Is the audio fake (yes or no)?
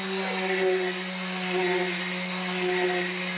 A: no